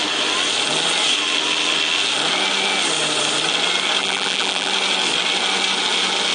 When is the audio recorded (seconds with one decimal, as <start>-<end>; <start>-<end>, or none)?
0.0-4.0; 4.7-6.3